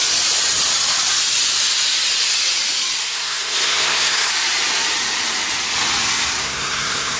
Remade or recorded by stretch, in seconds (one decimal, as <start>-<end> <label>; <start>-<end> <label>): 0.0-3.0 recorded; 3.0-4.3 remade; 4.3-6.4 recorded; 6.4-7.2 remade